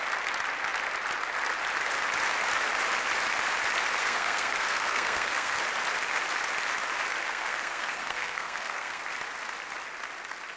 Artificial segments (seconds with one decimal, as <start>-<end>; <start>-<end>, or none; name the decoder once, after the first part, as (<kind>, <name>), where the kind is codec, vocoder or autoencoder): 4.0-5.6 (codec, SNAC); 7.2-9.0